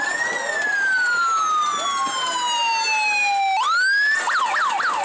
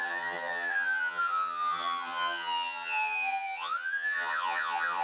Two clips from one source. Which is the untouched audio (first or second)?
first